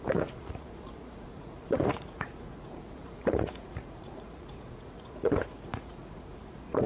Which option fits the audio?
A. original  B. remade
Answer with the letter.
B